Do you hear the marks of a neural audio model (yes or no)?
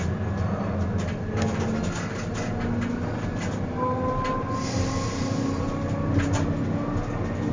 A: no